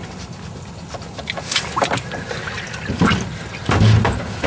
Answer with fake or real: real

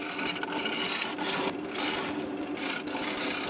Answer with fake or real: real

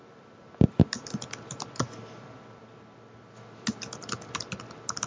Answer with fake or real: real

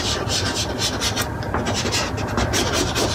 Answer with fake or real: real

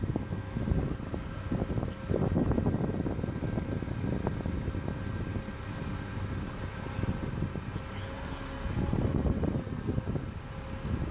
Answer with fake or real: real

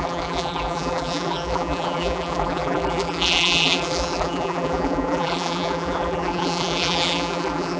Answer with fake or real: fake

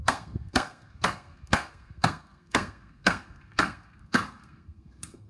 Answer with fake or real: fake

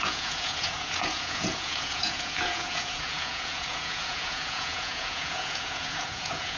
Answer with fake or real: fake